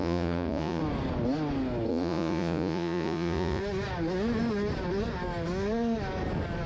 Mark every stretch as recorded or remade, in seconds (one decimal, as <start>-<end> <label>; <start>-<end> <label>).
0.0-0.8 remade; 0.8-1.9 recorded; 1.9-3.6 remade; 3.6-6.7 recorded